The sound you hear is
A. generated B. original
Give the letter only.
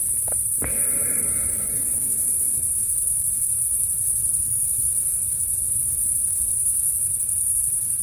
A